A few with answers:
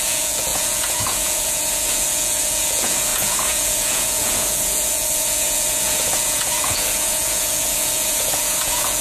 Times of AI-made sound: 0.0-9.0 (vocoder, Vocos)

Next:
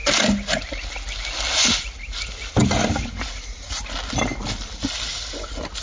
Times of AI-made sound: none

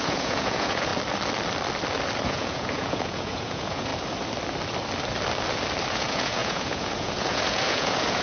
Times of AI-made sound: 0.0-0.9 (vocoder, Vocos); 2.2-3.9; 5.9-8.2

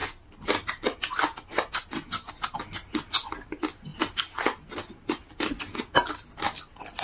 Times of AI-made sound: none

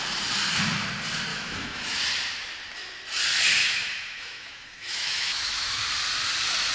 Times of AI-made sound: 1.3-2.0 (autoencoder, DAC-VAE); 3.6-5.8

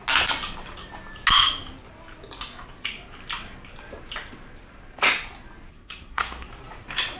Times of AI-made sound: 5.7-6.5 (codec, SNAC)

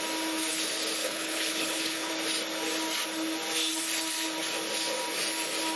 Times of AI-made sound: 1.0-2.1 (codec, HILCodec)

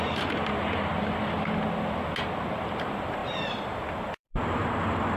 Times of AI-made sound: 0.0-0.9 (vocoder, BigVGAN v2); 2.6-5.2